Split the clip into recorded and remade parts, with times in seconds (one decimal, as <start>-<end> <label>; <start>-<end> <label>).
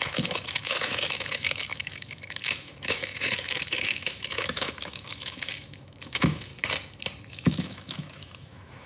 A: 0.0-6.5 remade; 6.5-7.3 recorded; 7.3-8.9 remade